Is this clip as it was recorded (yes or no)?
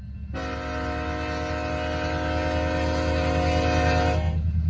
yes